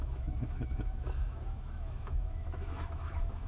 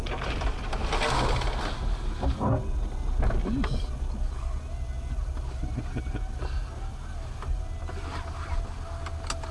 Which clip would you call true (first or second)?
second